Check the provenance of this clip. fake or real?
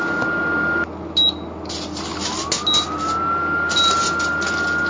real